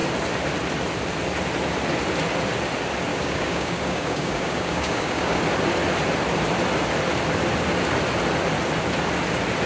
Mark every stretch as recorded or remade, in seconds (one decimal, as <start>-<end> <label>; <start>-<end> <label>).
0.0-3.1 recorded; 3.1-5.4 remade; 5.4-9.7 recorded